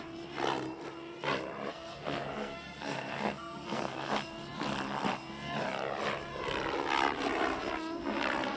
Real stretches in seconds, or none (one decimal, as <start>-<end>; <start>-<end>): 0.0-1.7; 4.1-8.6